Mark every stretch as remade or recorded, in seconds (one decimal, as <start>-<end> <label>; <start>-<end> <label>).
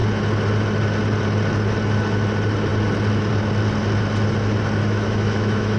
0.0-4.8 recorded; 4.8-5.8 remade